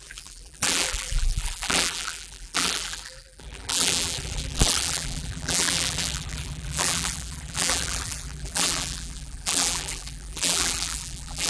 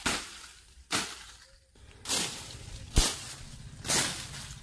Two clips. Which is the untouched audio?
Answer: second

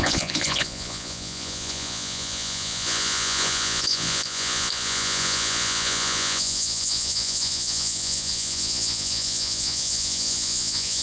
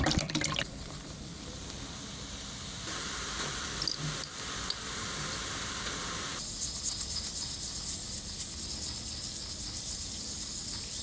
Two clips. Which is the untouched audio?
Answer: second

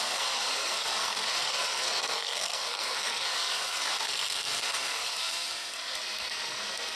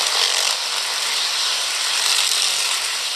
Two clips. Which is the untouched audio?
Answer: second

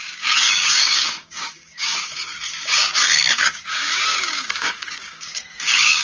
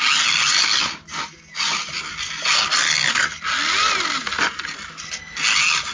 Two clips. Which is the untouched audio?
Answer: second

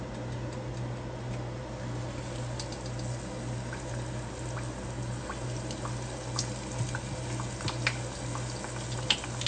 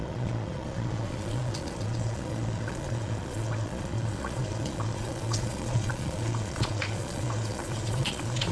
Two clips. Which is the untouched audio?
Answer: first